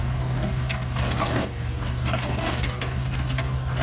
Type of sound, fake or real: fake